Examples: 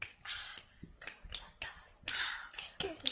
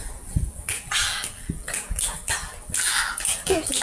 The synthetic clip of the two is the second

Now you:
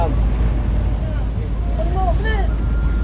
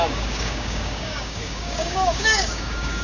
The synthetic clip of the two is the second